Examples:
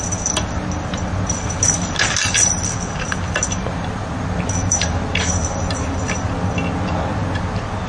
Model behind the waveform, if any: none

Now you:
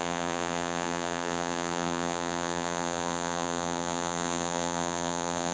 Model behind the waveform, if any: vocoder, BigVGAN v2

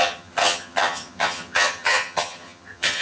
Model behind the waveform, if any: vocoder, HiFi-GAN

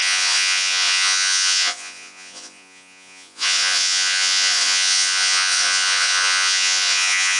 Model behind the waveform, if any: vocoder, Vocos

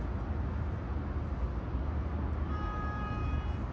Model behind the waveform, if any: none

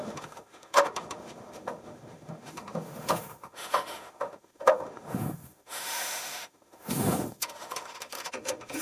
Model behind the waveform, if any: autoencoder, DAC-VAE